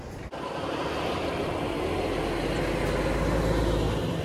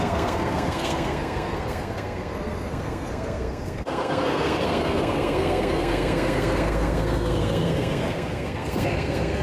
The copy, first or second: second